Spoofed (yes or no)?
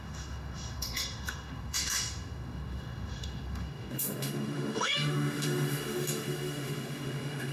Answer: yes